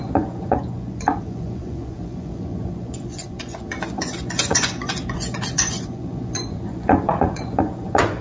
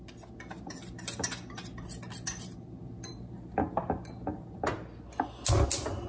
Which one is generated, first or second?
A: first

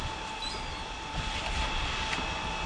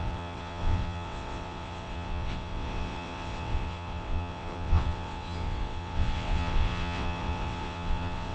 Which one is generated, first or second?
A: second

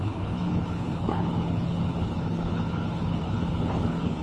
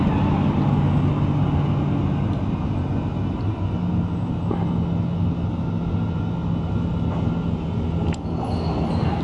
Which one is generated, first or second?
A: first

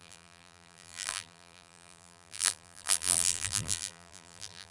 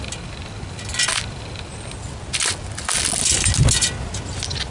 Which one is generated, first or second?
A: first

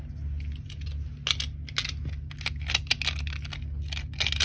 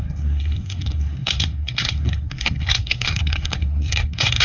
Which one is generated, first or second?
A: second